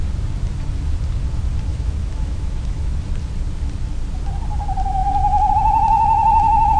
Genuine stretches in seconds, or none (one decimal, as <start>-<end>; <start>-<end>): 0.0-1.7; 2.9-6.8